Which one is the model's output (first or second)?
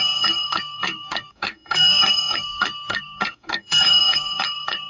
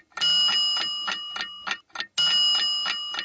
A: first